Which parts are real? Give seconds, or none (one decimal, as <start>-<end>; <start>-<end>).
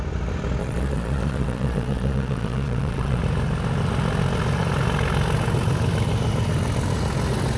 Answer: 0.0-0.6; 3.2-7.6